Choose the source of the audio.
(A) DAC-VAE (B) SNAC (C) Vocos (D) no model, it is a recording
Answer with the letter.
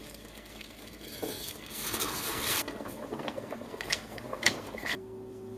B